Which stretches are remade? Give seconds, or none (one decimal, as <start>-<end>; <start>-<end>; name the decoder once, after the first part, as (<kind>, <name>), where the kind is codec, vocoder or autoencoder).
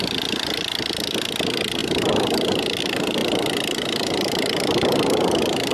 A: none